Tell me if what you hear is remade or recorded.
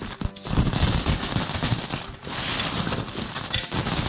recorded